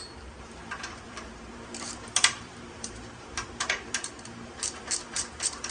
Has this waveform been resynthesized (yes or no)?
yes